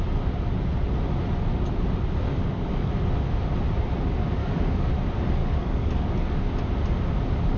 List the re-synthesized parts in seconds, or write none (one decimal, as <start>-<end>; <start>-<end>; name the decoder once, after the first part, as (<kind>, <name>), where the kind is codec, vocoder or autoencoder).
2.3-2.9 (codec, DAC); 4.4-4.9; 5.4-6.4